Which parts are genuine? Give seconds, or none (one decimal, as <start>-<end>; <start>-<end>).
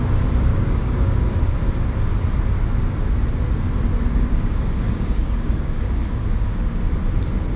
0.0-0.5; 1.3-4.1; 6.8-7.6